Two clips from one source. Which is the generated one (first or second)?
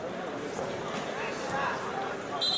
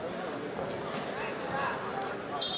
first